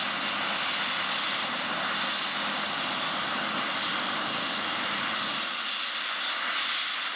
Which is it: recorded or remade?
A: recorded